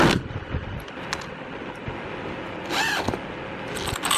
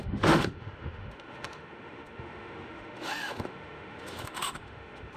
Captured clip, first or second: first